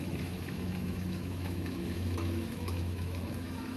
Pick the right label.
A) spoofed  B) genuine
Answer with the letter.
A